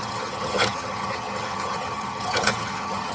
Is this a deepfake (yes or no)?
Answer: yes